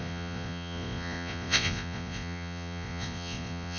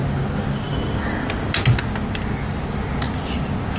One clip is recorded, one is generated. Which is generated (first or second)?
first